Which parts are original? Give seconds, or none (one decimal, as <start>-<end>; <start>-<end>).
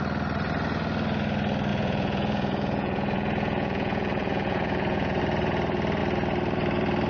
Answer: 0.0-1.7; 5.2-7.1